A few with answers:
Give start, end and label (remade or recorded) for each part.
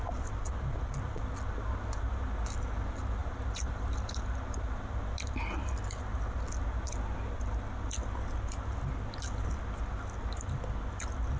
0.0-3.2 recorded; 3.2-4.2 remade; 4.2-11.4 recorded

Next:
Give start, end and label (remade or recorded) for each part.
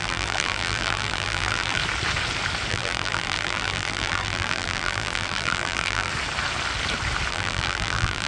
0.0-1.8 remade; 1.8-2.7 recorded; 2.7-6.1 remade; 6.1-7.3 recorded; 7.3-8.3 remade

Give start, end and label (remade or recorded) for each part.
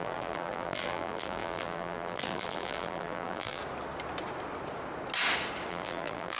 0.0-3.6 remade; 3.6-5.7 recorded; 5.7-6.4 remade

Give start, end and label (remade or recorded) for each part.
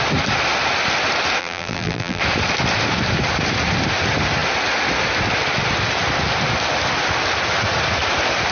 0.0-1.4 recorded; 1.4-2.2 remade; 2.2-8.5 recorded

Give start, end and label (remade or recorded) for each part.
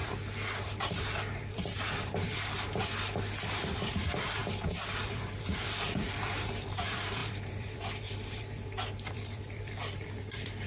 0.0-4.4 remade; 4.4-5.0 recorded; 5.0-10.7 remade